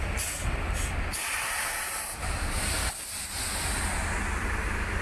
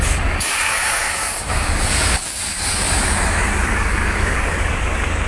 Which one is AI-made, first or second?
second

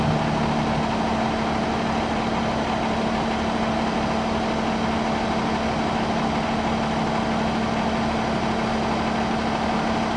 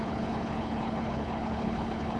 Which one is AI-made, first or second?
second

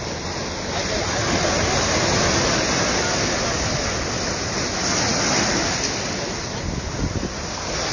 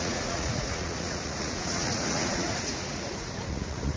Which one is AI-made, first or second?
second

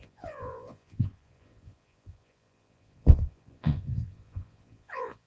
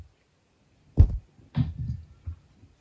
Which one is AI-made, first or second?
first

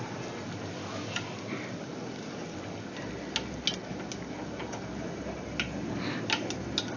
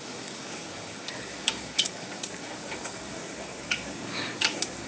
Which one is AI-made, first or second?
second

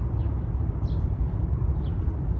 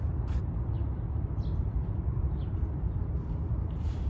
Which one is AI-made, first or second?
second